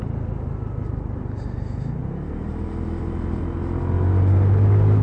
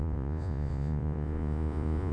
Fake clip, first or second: second